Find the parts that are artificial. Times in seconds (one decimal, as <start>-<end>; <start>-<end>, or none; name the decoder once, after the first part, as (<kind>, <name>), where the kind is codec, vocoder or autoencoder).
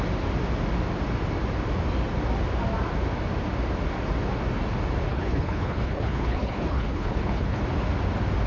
5.1-7.6 (codec, HILCodec)